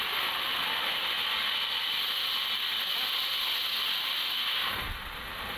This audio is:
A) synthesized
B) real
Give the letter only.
B